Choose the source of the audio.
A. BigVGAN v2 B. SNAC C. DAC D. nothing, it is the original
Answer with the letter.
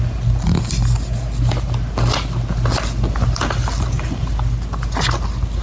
D